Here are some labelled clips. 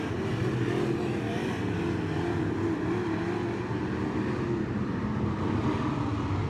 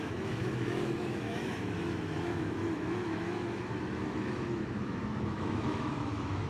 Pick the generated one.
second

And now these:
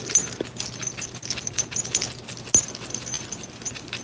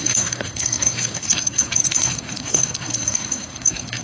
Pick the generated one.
second